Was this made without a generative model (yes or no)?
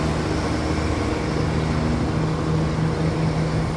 yes